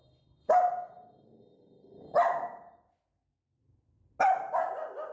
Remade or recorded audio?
recorded